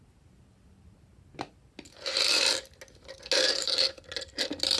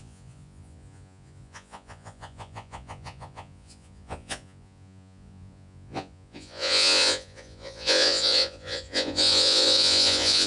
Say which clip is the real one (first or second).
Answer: first